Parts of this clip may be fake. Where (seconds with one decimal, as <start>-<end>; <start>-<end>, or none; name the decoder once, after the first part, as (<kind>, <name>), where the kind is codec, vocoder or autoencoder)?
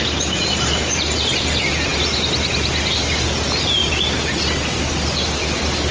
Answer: none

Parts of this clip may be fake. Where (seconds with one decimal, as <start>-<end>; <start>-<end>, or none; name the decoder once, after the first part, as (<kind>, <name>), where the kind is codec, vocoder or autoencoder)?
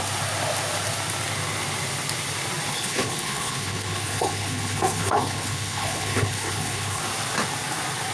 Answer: 2.7-7.0 (codec, HILCodec)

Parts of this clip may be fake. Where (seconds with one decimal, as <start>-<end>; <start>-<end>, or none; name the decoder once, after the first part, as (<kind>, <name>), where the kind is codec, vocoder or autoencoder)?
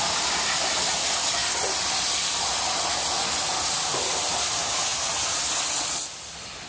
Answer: none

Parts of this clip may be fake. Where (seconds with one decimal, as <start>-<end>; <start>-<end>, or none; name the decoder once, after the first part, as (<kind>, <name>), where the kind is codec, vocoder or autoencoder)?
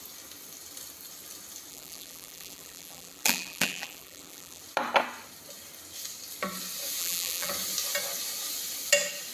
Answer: 1.7-4.6 (vocoder, BigVGAN v2); 7.0-7.5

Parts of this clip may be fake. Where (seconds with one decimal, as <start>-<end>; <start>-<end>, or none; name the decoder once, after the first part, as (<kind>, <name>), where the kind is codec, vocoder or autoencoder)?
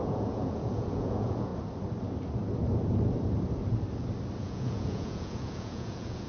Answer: 0.0-1.5 (vocoder, Vocos); 4.4-6.3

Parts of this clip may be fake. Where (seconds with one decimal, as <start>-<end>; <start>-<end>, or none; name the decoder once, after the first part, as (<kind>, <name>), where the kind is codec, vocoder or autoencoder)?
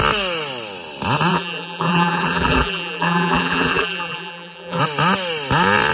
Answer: 1.3-4.8 (vocoder, BigVGAN v2)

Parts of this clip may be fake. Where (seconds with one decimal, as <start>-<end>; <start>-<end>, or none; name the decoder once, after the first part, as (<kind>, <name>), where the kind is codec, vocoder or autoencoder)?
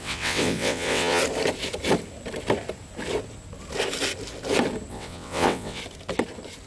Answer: 0.0-1.2 (vocoder, WaveNeXt); 4.9-5.8